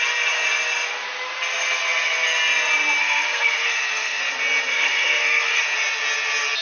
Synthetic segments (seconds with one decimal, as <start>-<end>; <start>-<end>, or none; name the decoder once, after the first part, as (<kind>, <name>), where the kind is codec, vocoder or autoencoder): 3.0-4.2 (codec, SNAC); 4.7-5.6